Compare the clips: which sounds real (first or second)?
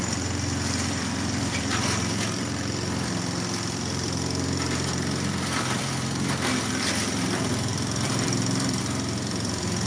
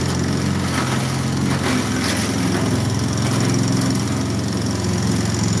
second